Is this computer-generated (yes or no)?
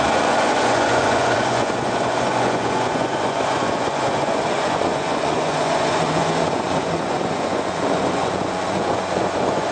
yes